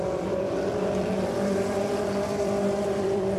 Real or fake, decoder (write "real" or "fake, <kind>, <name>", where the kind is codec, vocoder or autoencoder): fake, vocoder, BigVGAN v2